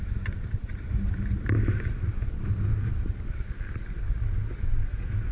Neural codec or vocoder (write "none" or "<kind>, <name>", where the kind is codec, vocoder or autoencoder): none